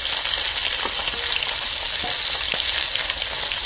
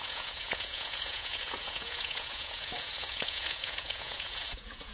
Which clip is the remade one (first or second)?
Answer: second